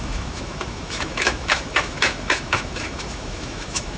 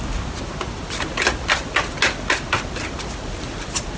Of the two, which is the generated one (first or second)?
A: first